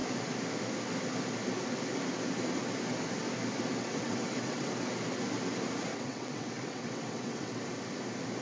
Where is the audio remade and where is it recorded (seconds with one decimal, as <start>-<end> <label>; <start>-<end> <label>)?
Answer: 0.0-3.8 recorded; 3.8-4.7 remade; 4.7-5.9 recorded; 5.9-7.6 remade; 7.6-8.4 recorded

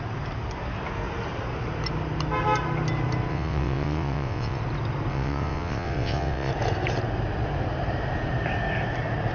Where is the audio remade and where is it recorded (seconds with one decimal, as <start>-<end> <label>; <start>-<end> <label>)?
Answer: 0.0-3.3 recorded; 3.3-4.6 remade; 4.6-5.1 recorded; 5.1-6.5 remade; 6.5-9.3 recorded

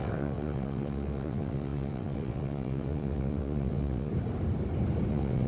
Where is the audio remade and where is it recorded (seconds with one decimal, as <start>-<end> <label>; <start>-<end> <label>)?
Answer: 0.0-4.1 remade; 4.1-5.1 recorded; 5.1-5.5 remade

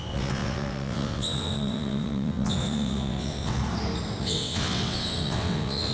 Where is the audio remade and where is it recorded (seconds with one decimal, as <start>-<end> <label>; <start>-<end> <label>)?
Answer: 0.0-3.6 remade; 3.6-4.2 recorded; 4.2-5.9 remade

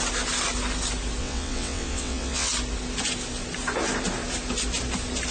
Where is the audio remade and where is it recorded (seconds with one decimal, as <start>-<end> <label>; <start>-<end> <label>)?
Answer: 0.0-1.2 recorded; 1.2-2.5 remade; 2.5-5.3 recorded

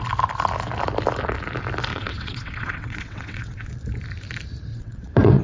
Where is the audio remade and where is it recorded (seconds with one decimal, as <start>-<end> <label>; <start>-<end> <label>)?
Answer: 0.0-1.9 recorded; 1.9-3.7 remade; 3.7-4.7 recorded; 4.7-5.4 remade

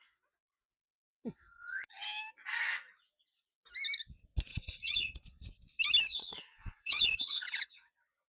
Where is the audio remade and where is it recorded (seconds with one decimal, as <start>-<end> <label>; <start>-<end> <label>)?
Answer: 0.0-1.1 recorded; 1.1-1.9 remade; 1.9-4.5 recorded; 4.5-5.4 remade; 5.4-6.1 recorded; 6.1-7.9 remade; 7.9-8.4 recorded